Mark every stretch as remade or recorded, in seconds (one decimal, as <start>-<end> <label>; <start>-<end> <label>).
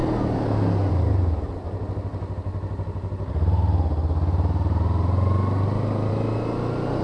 0.0-7.0 recorded